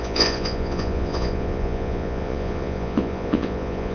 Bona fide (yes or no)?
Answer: no